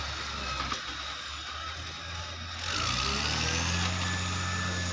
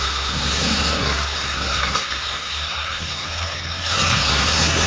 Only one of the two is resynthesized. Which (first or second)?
second